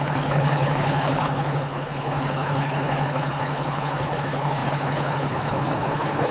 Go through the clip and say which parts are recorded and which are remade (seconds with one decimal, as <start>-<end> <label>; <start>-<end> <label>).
0.0-6.3 remade